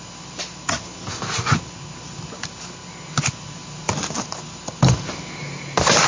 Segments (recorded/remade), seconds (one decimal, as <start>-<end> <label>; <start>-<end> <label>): 0.0-6.1 recorded